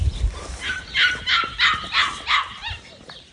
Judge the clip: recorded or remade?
recorded